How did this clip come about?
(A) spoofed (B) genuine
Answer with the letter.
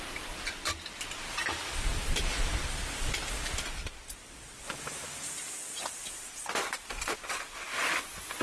B